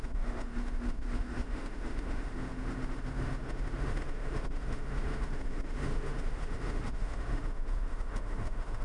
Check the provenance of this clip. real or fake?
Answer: fake